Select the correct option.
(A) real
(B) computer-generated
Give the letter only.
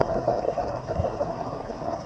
B